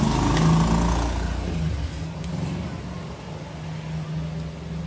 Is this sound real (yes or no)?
yes